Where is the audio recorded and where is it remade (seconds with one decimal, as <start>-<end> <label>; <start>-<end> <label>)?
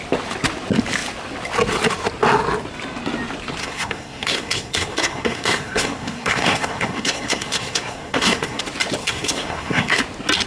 0.0-3.6 recorded; 3.6-8.6 remade; 8.6-9.0 recorded; 9.0-10.0 remade; 10.0-10.5 recorded